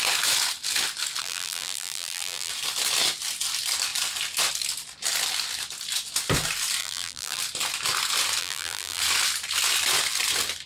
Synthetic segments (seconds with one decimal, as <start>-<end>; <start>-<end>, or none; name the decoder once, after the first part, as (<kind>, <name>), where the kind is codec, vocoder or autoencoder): 1.2-2.5 (vocoder, BigVGAN v2); 6.8-7.4; 8.4-9.0